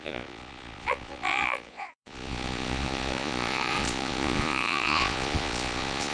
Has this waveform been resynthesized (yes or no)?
yes